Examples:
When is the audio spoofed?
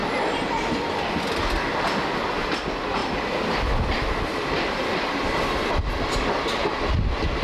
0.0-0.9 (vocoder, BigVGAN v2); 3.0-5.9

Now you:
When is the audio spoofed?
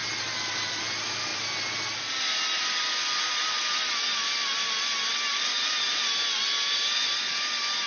none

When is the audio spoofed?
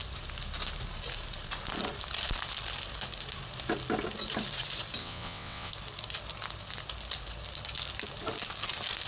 5.0-5.7 (vocoder, WaveNeXt)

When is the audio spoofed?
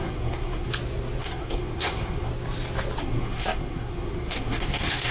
0.0-0.7 (codec, SNAC); 1.2-2.3; 3.0-5.1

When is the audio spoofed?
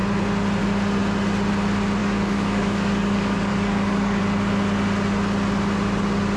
2.0-4.2 (codec, DAC)